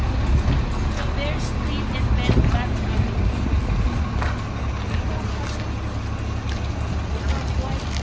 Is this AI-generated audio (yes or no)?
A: no